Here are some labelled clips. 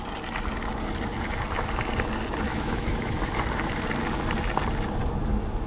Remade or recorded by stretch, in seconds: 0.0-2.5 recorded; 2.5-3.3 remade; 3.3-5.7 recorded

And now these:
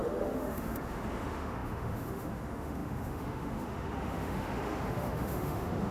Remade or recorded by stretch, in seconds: 0.0-5.9 remade

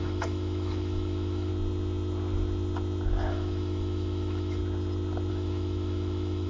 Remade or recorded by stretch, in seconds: 0.0-1.5 remade; 1.5-3.3 recorded; 3.3-4.6 remade; 4.6-5.3 recorded; 5.3-6.5 remade

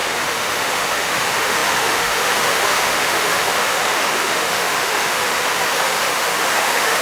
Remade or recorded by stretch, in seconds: 0.0-7.0 remade

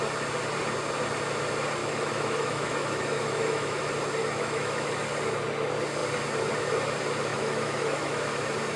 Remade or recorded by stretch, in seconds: 0.0-1.8 recorded; 1.8-3.8 remade; 3.8-4.2 recorded; 4.2-4.9 remade; 4.9-7.3 recorded; 7.3-8.2 remade; 8.2-8.8 recorded

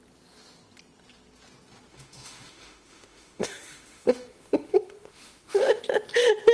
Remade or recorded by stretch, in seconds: 0.0-1.9 recorded; 1.9-5.8 remade; 5.8-6.5 recorded